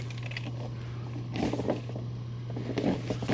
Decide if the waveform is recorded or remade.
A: recorded